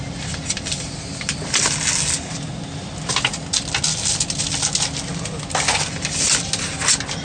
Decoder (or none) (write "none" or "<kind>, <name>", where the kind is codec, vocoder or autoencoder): none